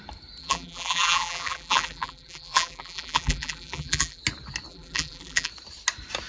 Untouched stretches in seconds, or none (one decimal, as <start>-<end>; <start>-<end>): 0.0-0.4; 4.2-4.7; 5.5-6.3